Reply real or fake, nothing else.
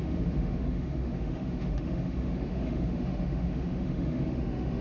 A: fake